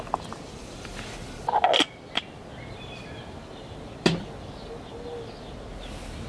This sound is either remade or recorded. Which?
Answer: recorded